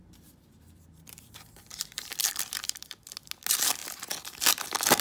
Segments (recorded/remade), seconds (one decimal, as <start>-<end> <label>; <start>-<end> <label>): 0.0-3.0 remade; 3.0-5.0 recorded